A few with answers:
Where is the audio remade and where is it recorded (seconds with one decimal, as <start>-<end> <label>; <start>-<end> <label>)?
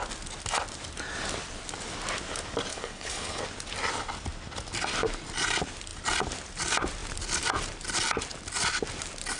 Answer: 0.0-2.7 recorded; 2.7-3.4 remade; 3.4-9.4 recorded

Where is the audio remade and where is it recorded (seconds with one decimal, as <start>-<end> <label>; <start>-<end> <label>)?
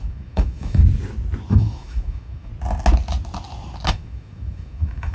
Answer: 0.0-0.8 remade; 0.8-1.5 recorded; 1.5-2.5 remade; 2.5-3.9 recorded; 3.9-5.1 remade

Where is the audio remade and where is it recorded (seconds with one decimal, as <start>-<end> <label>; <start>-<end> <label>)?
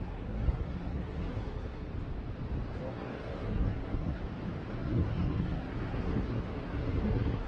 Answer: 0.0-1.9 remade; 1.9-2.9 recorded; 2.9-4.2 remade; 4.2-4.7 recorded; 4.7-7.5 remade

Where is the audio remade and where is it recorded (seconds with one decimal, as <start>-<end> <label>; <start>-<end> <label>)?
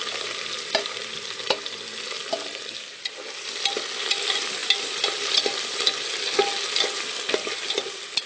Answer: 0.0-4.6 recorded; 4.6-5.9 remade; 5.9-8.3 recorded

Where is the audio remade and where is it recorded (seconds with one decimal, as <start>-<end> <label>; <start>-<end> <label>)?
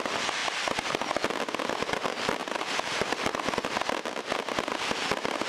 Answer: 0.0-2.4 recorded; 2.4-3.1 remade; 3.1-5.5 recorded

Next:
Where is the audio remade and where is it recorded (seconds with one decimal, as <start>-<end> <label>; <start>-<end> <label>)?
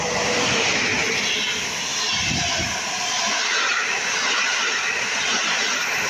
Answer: 0.0-6.1 recorded